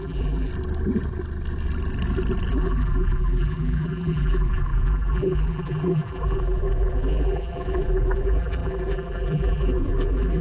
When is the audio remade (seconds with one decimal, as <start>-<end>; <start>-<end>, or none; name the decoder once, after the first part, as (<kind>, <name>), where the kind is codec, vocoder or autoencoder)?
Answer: 0.0-0.5 (vocoder, BigVGAN v2); 2.5-10.4